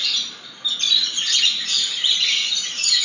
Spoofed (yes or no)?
no